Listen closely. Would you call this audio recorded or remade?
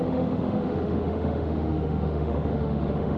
remade